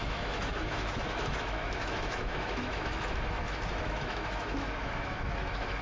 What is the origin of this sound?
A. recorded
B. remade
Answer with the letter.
B